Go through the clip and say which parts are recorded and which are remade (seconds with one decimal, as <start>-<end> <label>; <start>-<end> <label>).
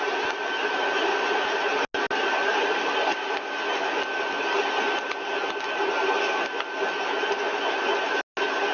0.0-8.7 recorded